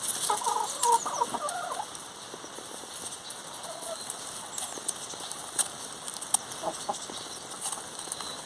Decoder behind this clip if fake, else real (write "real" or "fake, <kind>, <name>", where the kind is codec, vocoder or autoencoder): real